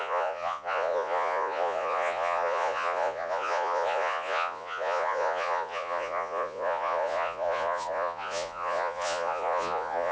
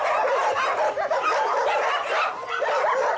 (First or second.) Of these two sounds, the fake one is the first